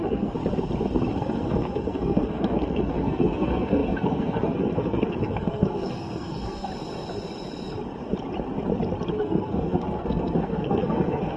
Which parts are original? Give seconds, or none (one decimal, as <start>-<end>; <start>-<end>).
0.4-1.1; 6.7-9.1